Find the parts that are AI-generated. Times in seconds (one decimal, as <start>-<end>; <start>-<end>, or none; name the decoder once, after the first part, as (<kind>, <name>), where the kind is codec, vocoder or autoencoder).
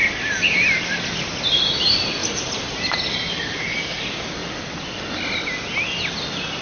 none